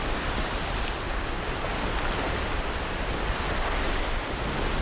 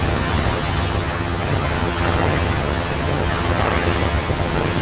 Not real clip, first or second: second